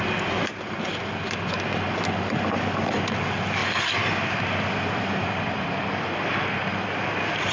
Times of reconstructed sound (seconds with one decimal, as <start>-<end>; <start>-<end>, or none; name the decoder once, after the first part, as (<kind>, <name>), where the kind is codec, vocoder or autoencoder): none